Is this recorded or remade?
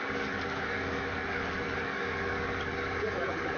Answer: remade